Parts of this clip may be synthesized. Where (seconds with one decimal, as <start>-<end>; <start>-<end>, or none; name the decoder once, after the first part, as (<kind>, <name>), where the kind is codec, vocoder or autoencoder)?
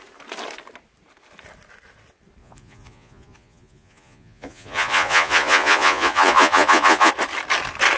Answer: 2.4-7.1 (vocoder, Vocos)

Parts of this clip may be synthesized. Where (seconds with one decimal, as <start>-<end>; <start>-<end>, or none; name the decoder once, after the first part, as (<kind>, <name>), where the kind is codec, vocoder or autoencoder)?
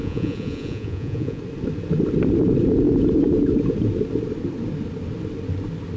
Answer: 0.0-1.4 (vocoder, Vocos)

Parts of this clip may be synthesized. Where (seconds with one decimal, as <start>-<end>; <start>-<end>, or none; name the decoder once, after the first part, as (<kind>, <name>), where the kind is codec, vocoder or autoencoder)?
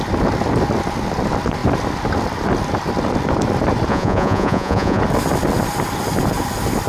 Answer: 3.9-5.0 (vocoder, Vocos)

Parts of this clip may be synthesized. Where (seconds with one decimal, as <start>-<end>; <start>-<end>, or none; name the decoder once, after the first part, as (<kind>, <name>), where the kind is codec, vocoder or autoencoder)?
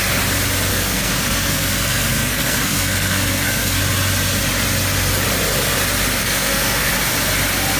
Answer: 0.7-3.8 (codec, SNAC); 6.2-6.9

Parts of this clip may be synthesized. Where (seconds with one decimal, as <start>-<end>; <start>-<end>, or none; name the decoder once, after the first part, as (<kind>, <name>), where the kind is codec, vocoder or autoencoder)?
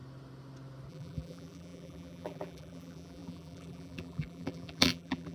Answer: 0.9-5.3 (vocoder, BigVGAN v2)